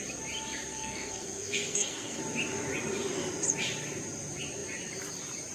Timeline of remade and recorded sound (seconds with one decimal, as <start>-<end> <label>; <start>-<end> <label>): 0.0-0.7 recorded; 0.7-2.2 remade; 2.2-5.5 recorded